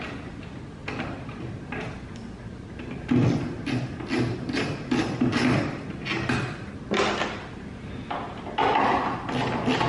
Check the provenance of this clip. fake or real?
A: real